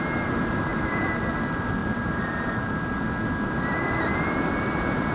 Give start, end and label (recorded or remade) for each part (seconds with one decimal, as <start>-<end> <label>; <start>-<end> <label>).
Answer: 0.0-0.7 recorded; 0.7-1.3 remade; 1.3-1.8 recorded; 1.8-5.1 remade